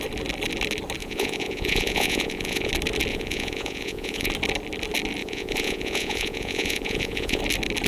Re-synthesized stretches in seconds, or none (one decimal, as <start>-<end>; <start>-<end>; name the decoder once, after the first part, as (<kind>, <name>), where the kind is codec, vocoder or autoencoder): 1.0-2.7 (vocoder, Vocos); 3.1-4.3; 5.2-7.4

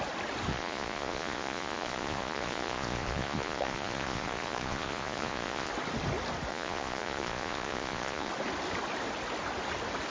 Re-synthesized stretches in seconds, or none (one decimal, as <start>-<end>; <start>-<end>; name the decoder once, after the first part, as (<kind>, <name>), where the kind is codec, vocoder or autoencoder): 0.5-5.7 (vocoder, Vocos); 6.5-8.3

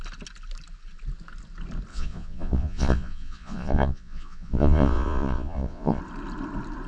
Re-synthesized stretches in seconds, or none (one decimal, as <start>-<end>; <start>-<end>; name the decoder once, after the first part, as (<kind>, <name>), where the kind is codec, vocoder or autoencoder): 1.9-6.0 (vocoder, Vocos)

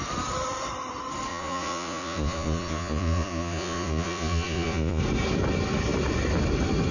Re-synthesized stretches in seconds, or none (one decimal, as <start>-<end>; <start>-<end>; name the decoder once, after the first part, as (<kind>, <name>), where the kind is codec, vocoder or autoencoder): 1.3-5.0 (vocoder, Vocos)

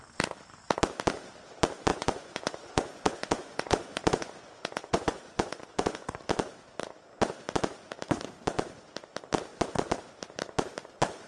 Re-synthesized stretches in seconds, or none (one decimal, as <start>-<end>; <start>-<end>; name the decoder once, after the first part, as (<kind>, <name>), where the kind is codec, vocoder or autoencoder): 1.9-6.2 (vocoder, Vocos)

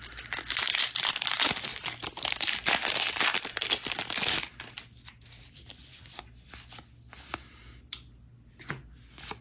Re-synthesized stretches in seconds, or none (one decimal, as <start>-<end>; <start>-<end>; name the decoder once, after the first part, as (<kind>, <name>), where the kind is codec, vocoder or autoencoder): 5.8-6.3 (vocoder, Vocos)